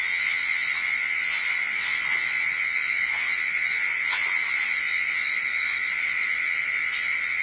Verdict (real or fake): fake